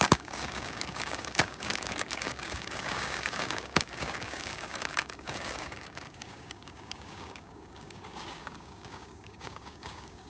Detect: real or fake fake